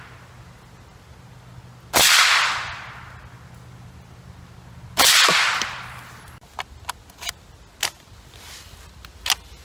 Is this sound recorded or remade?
recorded